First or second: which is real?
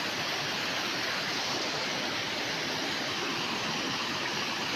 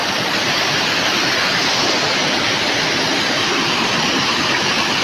second